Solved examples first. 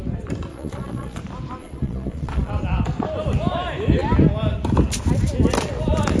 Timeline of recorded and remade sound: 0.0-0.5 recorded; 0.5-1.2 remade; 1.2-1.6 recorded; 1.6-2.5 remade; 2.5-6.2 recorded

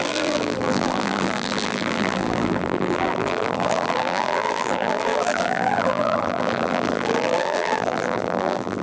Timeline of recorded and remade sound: 0.0-8.8 remade

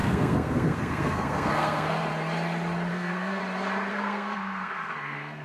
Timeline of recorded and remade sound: 0.0-2.1 remade; 2.1-2.9 recorded; 2.9-3.4 remade; 3.4-3.9 recorded; 3.9-5.4 remade

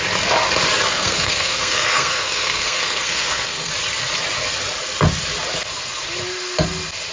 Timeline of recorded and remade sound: 0.0-0.9 recorded; 0.9-3.7 remade; 3.7-7.1 recorded

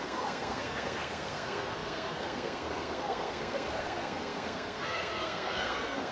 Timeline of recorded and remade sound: 0.0-6.1 remade